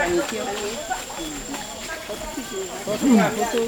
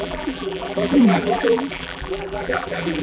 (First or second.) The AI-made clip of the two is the second